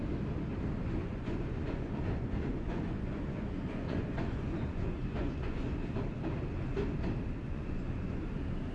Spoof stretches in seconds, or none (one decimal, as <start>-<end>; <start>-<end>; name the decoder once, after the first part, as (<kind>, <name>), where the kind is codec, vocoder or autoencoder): 0.8-5.7 (vocoder, Vocos); 7.4-8.2